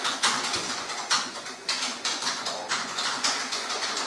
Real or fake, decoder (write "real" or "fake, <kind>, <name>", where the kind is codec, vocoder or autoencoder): fake, vocoder, Vocos